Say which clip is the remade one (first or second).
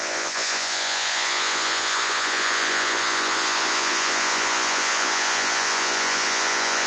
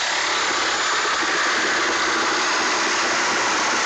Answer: first